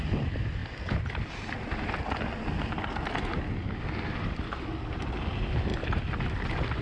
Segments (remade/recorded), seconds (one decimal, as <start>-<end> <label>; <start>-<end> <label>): 0.0-6.8 recorded